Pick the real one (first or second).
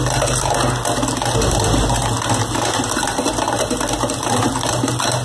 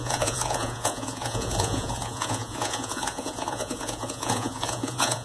first